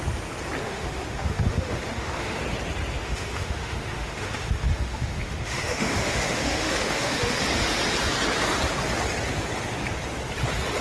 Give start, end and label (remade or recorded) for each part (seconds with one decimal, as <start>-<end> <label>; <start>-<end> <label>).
0.0-0.6 recorded; 0.6-2.4 remade; 2.4-3.0 recorded; 3.0-7.4 remade; 7.4-10.8 recorded